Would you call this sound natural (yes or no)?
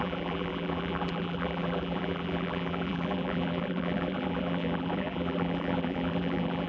no